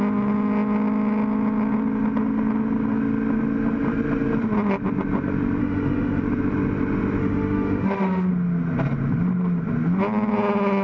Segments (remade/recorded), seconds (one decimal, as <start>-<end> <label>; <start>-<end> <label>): 0.0-5.6 recorded; 5.6-6.2 remade; 6.2-7.2 recorded; 7.2-8.3 remade; 8.3-10.8 recorded